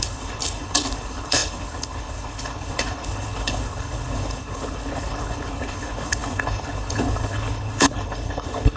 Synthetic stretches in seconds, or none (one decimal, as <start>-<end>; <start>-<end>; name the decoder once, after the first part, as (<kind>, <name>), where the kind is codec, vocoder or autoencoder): 0.0-8.8 (codec, HILCodec)